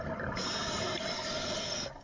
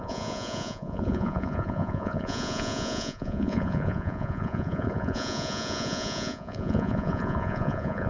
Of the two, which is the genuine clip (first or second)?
first